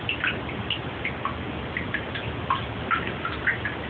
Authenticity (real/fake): real